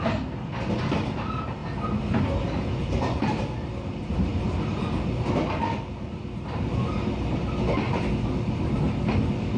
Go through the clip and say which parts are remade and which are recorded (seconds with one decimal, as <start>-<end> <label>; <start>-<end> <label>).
0.0-9.6 recorded